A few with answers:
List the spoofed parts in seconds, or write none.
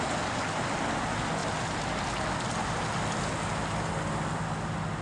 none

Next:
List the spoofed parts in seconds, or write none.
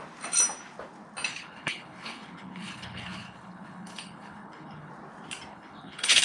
1.3-4.9 (codec, HILCodec); 5.5-6.2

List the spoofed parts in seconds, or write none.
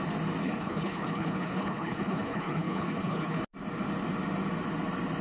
0.4-3.4 (codec, HILCodec)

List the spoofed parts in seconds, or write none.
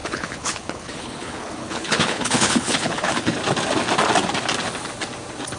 0.0-3.4 (codec, HILCodec)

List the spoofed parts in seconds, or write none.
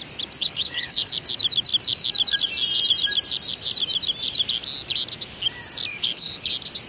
0.4-1.1 (codec, HILCodec); 5.9-6.5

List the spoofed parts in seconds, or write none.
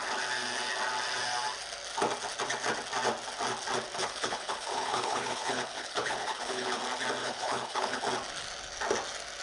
4.0-6.8 (codec, HILCodec); 7.2-8.0